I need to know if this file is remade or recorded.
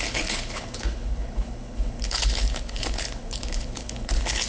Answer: remade